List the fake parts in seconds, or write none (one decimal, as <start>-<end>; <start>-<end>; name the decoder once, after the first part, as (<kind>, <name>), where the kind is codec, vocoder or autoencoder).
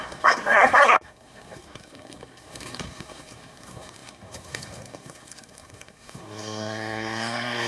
0.0-7.7 (codec, SNAC)